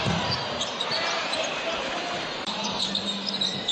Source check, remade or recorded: remade